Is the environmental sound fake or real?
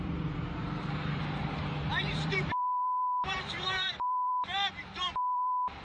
fake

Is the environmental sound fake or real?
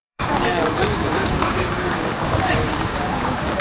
fake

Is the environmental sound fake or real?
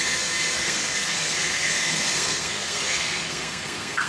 fake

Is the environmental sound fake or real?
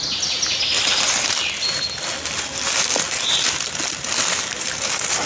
real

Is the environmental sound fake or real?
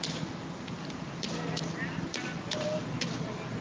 real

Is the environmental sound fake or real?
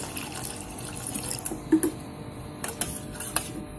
real